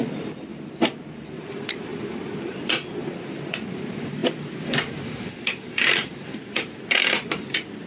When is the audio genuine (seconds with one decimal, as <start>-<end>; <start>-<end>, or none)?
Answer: 0.5-1.4